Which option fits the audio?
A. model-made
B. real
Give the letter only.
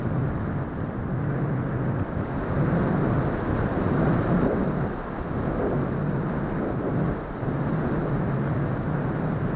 B